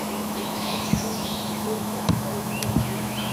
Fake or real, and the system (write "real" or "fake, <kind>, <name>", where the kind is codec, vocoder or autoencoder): fake, autoencoder, DAC-VAE